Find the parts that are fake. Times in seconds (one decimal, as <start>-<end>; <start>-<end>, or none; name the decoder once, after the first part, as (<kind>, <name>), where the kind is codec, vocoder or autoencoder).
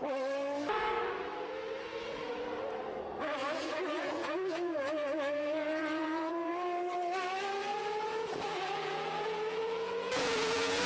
3.4-6.5 (vocoder, Vocos); 7.7-10.9